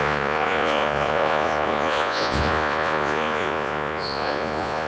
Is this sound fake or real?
fake